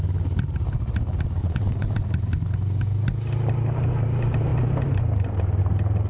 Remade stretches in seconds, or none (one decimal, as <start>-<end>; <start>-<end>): 1.4-1.9